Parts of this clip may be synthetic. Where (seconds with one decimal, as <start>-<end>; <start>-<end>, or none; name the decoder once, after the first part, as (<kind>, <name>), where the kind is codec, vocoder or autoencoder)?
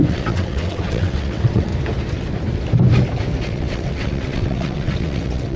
0.0-1.7 (vocoder, WaveNeXt); 3.4-5.6